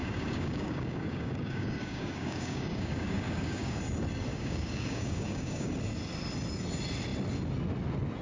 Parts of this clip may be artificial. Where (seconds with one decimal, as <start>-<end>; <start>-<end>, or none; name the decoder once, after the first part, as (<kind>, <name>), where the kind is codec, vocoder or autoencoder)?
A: 0.0-3.8 (codec, DAC); 4.3-5.7